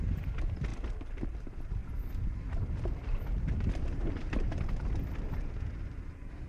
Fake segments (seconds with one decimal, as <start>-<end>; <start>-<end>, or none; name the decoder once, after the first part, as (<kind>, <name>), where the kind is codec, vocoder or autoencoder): 0.0-0.7 (vocoder, BigVGAN v2); 1.3-6.5